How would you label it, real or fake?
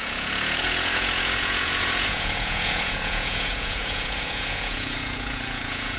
fake